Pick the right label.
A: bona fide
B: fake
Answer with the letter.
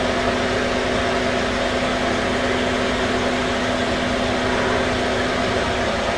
A